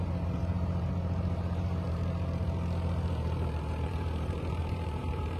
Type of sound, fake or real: fake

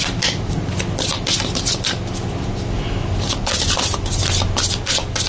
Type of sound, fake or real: real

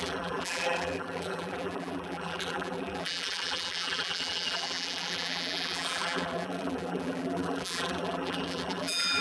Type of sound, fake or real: fake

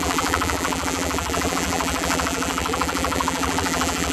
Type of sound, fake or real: fake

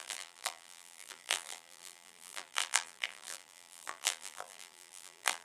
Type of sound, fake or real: fake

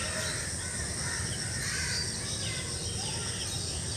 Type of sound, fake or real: real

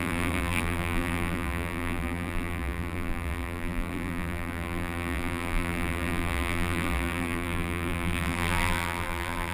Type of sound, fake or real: fake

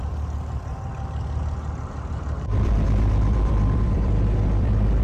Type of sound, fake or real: fake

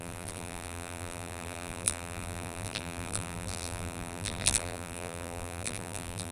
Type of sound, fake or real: fake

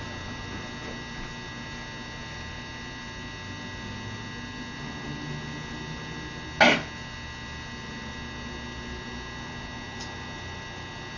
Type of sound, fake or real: real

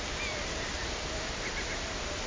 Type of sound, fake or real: real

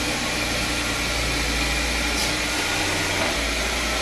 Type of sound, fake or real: real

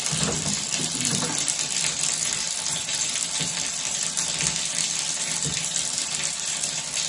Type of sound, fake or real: fake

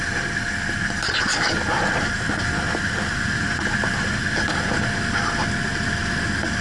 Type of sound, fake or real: real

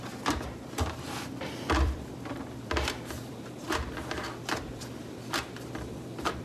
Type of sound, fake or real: fake